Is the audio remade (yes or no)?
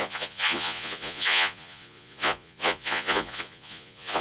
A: yes